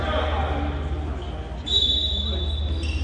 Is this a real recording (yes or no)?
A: yes